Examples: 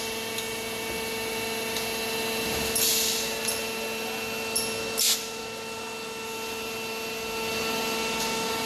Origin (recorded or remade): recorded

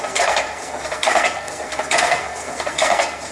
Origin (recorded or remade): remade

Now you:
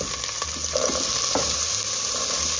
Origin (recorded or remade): recorded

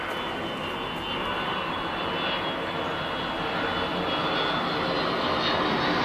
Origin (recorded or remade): recorded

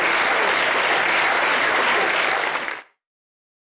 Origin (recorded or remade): recorded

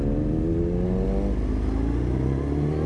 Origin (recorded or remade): recorded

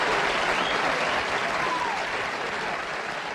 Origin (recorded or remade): recorded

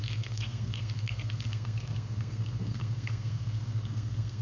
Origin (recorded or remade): remade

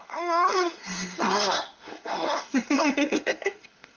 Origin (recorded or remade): remade